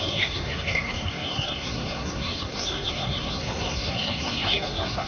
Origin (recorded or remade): remade